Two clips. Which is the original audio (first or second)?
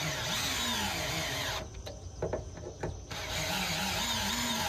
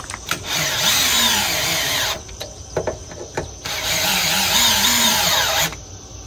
first